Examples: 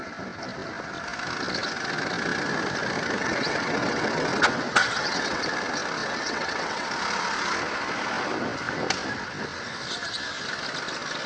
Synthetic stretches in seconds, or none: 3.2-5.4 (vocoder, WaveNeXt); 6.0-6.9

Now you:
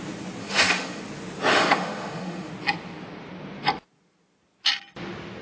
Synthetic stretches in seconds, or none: 0.4-1.0 (autoencoder, DAC-VAE); 1.5-2.5

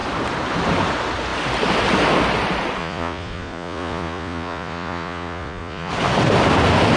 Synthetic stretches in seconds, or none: 2.8-5.9 (vocoder, Vocos)

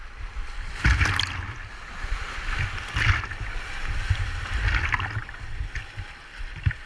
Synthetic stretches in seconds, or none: none

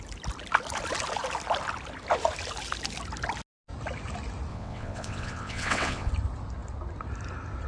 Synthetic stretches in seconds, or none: 4.5-6.1 (vocoder, WaveNeXt)

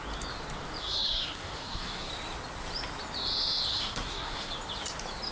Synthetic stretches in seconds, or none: 0.8-2.1 (codec, SNAC); 3.7-4.5

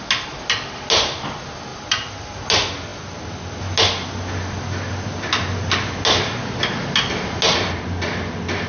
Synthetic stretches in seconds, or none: 1.7-2.3 (vocoder, BigVGAN v2)

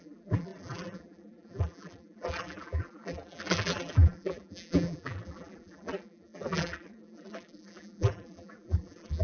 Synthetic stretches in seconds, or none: 0.0-9.2 (vocoder, BigVGAN v2)